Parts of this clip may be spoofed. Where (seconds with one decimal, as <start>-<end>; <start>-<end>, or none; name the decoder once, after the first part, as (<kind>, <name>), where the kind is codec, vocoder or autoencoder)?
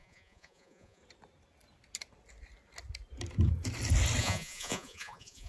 0.0-1.0 (vocoder, Vocos); 4.2-5.5